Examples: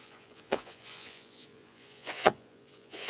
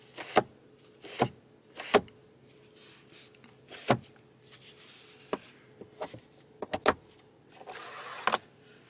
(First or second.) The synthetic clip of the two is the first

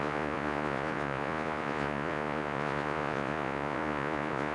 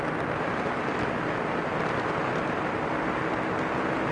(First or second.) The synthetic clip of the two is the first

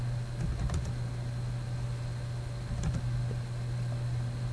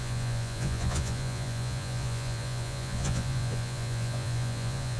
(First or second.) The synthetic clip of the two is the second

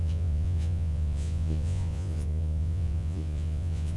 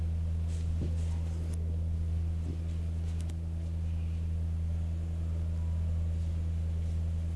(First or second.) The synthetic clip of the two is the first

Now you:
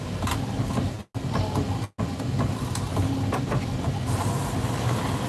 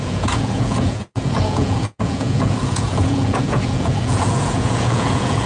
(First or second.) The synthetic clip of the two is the second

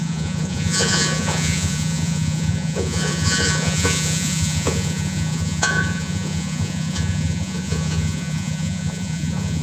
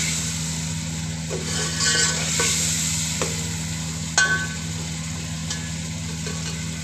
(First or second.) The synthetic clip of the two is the first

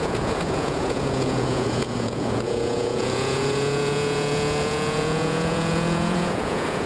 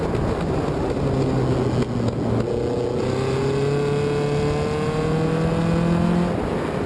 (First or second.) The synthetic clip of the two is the first